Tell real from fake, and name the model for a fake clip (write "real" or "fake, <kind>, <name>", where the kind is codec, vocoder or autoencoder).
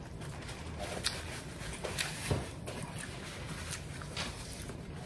real